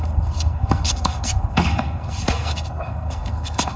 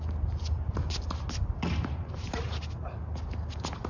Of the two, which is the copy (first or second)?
first